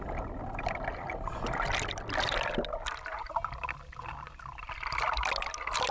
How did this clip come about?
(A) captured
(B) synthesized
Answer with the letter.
A